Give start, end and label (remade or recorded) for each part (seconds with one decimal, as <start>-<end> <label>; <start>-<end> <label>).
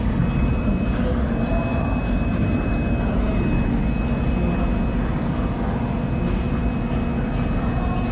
0.0-1.7 recorded; 1.7-2.7 remade; 2.7-8.1 recorded